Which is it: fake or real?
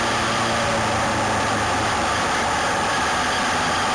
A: real